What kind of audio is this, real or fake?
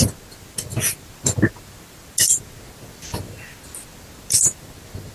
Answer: real